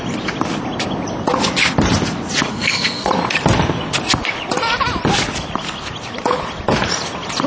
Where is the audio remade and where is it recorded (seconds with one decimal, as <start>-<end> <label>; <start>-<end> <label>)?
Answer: 0.0-2.5 recorded; 2.5-3.1 remade; 3.1-7.5 recorded